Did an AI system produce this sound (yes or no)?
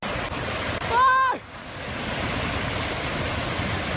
no